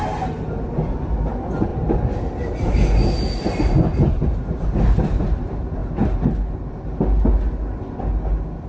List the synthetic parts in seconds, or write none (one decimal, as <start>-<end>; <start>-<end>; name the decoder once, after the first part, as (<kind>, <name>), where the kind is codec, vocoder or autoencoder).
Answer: none